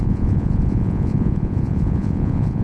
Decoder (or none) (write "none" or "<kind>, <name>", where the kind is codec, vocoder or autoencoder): vocoder, Vocos